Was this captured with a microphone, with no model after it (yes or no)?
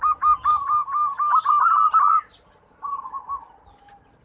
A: yes